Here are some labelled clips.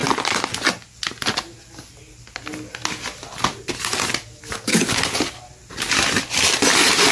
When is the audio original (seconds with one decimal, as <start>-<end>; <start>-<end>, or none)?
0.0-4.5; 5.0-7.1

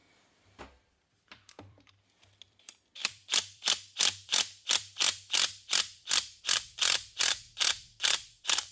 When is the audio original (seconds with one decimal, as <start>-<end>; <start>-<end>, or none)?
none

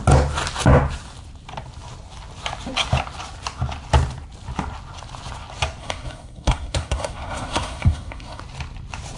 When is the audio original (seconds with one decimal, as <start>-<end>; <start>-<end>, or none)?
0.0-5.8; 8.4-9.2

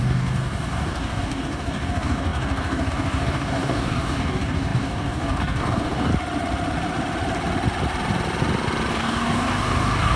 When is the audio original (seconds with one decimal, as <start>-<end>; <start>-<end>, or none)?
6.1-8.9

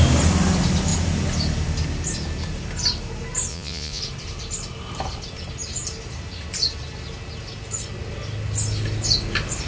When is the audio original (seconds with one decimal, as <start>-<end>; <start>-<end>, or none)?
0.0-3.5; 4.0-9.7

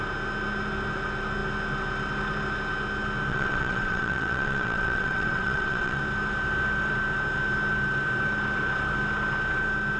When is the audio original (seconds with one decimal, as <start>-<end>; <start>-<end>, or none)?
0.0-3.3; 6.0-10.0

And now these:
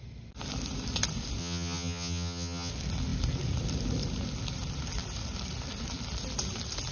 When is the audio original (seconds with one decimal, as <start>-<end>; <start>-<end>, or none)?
0.0-1.4; 2.7-6.9